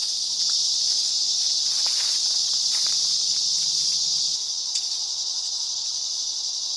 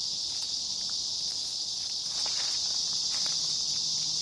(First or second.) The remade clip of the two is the first